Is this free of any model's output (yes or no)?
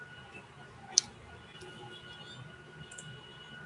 yes